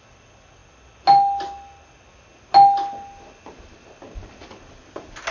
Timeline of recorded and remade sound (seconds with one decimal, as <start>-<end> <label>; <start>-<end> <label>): 0.0-5.3 recorded